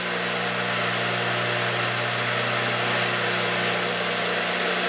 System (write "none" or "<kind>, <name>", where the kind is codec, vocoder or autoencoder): none